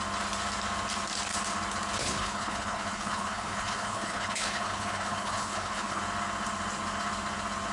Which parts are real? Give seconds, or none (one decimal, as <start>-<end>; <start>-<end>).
0.0-2.0; 6.0-7.7